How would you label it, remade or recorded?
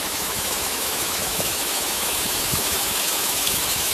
remade